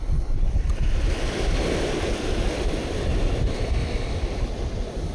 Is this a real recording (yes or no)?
yes